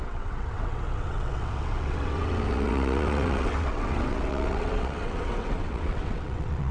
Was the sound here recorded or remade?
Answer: remade